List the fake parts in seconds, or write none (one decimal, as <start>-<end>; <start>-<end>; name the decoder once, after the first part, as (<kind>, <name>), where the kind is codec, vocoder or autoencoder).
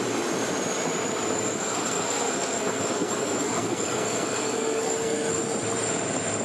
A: 1.5-5.3 (codec, SNAC)